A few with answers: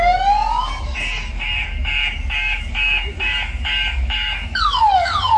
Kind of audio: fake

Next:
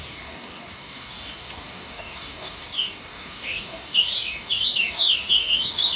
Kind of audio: fake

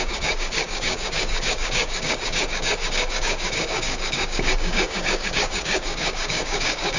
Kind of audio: fake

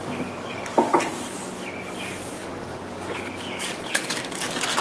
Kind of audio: fake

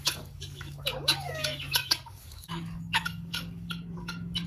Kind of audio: fake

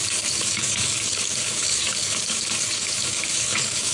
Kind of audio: fake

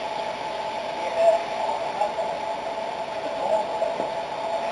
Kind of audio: real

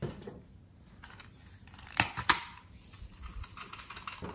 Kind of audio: real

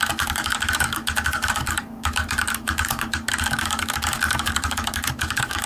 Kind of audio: fake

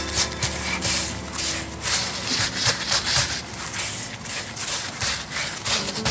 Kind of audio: real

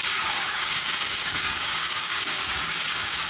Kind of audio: fake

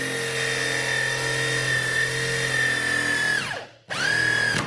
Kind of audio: real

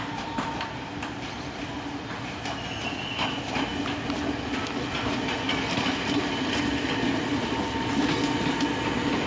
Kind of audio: real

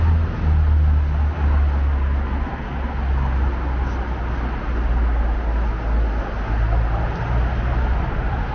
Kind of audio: real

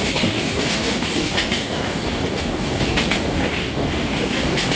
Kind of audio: fake